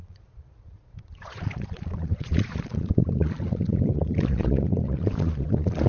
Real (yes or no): no